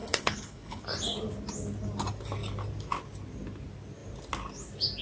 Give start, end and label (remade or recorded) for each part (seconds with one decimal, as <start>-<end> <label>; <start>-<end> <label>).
0.0-0.8 remade; 0.8-5.0 recorded